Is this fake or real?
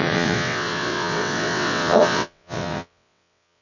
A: fake